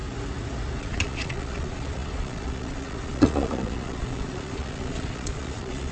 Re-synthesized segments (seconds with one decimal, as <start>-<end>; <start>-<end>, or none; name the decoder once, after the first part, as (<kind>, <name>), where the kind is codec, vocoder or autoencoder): 0.8-5.9 (vocoder, Vocos)